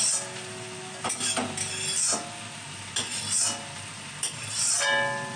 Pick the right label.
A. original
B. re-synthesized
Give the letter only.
A